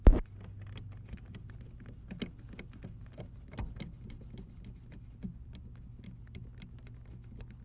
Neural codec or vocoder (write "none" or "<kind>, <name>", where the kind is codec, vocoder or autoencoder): none